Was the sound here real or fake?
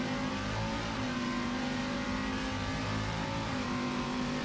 fake